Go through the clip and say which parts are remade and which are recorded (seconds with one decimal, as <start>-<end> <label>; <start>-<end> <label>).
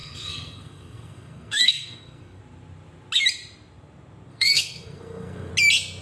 0.0-2.4 remade; 2.4-4.3 recorded; 4.3-5.5 remade; 5.5-6.0 recorded